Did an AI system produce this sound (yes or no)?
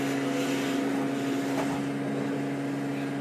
no